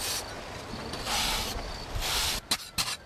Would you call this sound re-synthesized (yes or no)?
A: no